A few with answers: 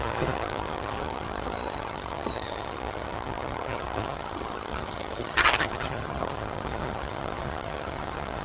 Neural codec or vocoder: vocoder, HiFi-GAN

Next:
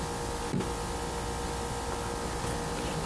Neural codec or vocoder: none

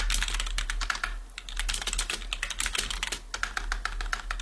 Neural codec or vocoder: none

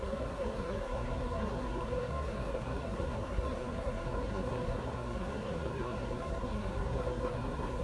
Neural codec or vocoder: codec, SNAC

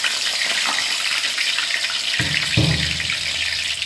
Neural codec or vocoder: none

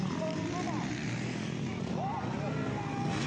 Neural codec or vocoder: none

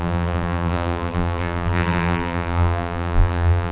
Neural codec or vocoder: vocoder, BigVGAN v2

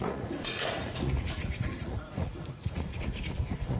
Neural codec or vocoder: vocoder, Vocos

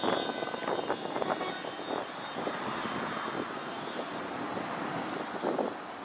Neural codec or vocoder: none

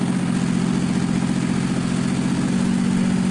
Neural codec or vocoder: none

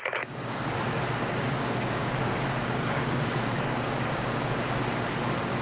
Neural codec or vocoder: codec, DAC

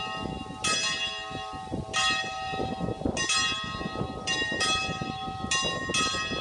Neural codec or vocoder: none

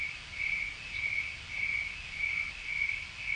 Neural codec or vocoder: none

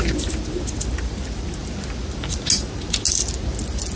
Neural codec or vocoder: none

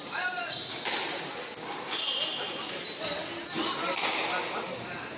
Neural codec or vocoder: none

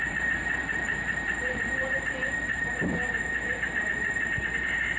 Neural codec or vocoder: vocoder, BigVGAN v2